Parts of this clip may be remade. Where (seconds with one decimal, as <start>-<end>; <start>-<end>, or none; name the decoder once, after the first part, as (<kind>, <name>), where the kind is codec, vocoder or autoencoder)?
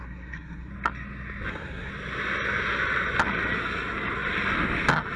0.0-0.7 (codec, SNAC); 1.5-1.9